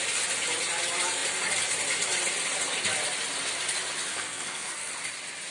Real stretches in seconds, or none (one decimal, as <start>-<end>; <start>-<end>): 0.0-4.1; 4.9-5.5

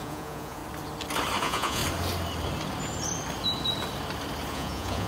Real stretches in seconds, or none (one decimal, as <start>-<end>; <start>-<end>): 0.6-1.4; 1.8-4.5